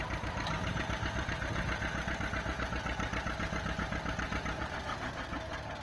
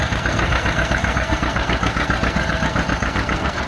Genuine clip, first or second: first